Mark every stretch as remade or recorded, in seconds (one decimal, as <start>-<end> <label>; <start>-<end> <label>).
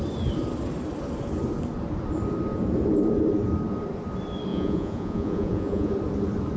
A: 0.0-4.5 recorded; 4.5-5.9 remade; 5.9-6.6 recorded